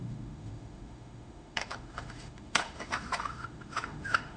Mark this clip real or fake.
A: fake